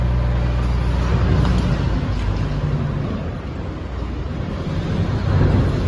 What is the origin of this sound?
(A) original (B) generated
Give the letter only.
A